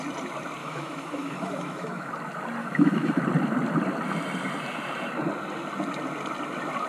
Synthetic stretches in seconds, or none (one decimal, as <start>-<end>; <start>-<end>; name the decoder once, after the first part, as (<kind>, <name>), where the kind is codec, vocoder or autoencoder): 0.6-2.1 (autoencoder, DAC-VAE); 2.6-3.2